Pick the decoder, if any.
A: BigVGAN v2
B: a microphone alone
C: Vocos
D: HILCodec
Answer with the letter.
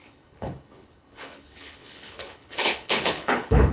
D